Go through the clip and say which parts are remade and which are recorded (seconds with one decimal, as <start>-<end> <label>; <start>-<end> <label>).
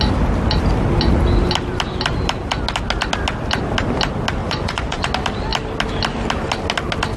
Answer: 0.0-4.4 recorded; 4.4-5.1 remade; 5.1-7.2 recorded